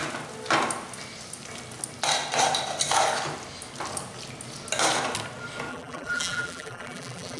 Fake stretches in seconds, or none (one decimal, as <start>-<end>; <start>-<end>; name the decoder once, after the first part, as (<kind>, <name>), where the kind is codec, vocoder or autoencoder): 5.7-7.4 (vocoder, BigVGAN v2)

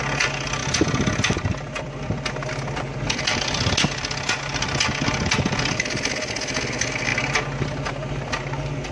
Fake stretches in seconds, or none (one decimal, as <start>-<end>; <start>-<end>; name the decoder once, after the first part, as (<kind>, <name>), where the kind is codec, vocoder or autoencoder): none